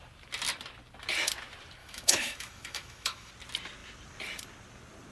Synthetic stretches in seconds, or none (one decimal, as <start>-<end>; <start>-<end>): 1.8-3.3